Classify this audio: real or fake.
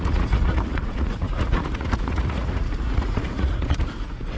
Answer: fake